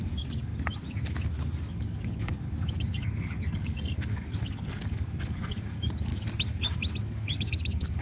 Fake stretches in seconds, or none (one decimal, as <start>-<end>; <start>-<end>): 0.0-0.5; 1.7-6.1; 7.0-8.0